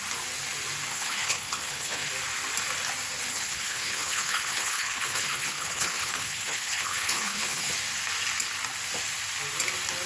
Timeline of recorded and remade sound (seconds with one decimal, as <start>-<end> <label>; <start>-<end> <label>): 0.0-0.9 recorded; 0.9-2.1 remade; 2.1-3.3 recorded; 3.3-7.7 remade; 7.7-10.1 recorded